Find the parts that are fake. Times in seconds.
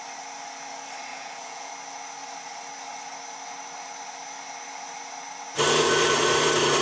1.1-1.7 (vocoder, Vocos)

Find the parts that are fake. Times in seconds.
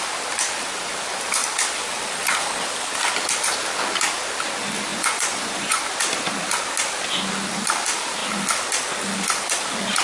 4.9-5.8 (vocoder, Vocos)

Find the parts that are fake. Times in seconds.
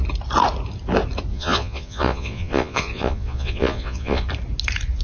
1.3-4.3 (vocoder, Vocos)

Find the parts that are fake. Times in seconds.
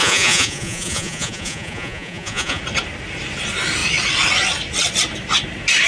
0.0-2.6 (vocoder, Vocos)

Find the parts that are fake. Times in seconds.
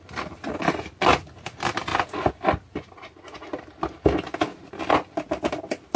none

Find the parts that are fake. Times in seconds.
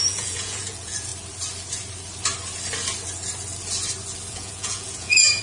0.0-1.1 (vocoder, Vocos); 4.3-5.4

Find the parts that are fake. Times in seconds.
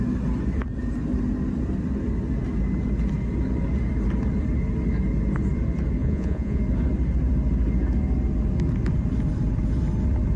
6.0-6.6 (vocoder, Vocos)